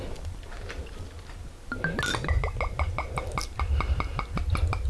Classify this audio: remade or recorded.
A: recorded